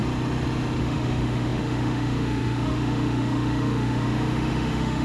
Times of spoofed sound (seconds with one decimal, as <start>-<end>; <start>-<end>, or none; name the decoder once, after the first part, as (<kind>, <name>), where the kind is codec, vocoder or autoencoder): 0.8-5.0 (autoencoder, DAC-VAE)